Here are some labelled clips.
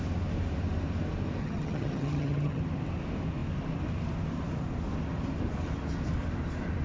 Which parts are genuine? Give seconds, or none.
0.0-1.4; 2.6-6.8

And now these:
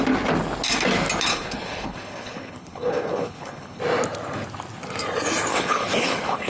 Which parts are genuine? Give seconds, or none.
0.0-1.3; 3.8-5.5

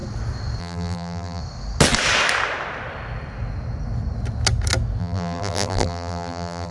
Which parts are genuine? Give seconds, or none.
0.0-0.6; 1.4-5.0

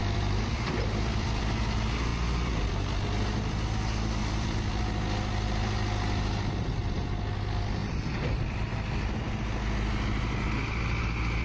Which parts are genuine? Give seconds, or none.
1.4-4.2; 4.8-7.8; 8.7-11.4

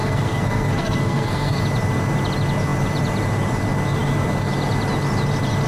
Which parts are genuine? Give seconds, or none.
1.6-5.7

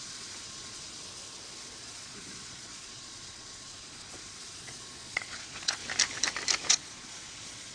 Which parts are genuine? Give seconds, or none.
1.0-1.8; 5.8-6.7

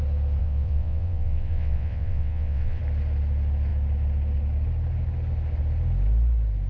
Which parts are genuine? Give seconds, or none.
0.0-0.4; 2.8-6.7